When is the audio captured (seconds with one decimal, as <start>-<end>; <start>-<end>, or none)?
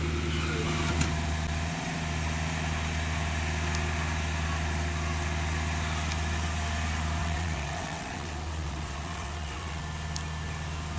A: 0.0-7.2; 9.8-11.0